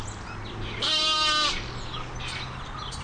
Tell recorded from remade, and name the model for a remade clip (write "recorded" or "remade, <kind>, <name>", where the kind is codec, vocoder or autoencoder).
recorded